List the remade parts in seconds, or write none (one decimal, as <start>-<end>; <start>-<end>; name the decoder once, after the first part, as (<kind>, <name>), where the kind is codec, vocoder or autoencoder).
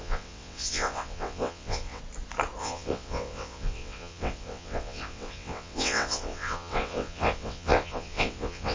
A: 0.0-2.0 (vocoder, WaveNeXt); 2.6-8.7